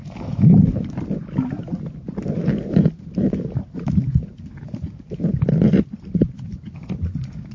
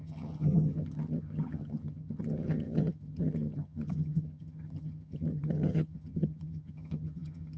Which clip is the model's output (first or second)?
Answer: second